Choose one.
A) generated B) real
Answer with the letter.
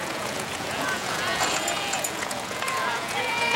A